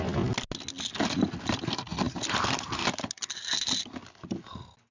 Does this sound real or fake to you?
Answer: real